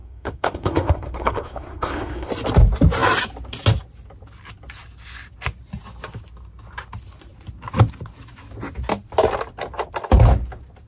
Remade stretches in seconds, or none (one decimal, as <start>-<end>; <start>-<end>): 0.0-2.3